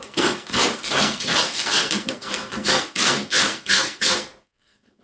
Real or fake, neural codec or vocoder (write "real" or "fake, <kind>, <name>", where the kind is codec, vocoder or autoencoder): fake, codec, SNAC